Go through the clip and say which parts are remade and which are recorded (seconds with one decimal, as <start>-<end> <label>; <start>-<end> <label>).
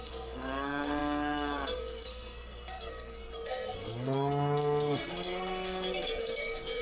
0.0-6.8 remade